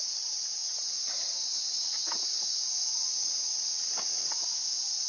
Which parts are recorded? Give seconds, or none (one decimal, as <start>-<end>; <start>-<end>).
0.0-5.1